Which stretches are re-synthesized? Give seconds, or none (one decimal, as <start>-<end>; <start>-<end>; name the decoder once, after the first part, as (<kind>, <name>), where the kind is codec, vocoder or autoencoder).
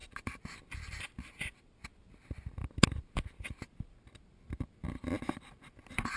none